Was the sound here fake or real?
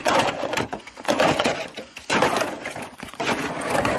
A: fake